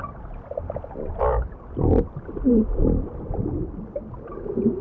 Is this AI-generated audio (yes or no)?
yes